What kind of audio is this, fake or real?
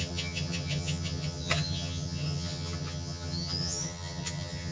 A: fake